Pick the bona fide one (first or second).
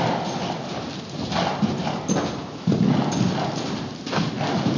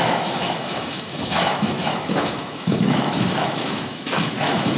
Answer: first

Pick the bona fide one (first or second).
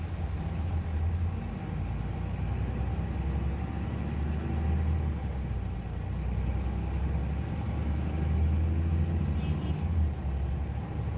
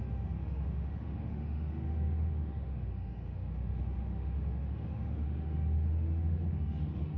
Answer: first